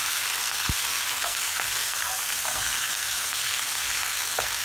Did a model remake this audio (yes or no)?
yes